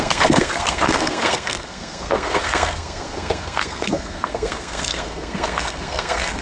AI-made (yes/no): yes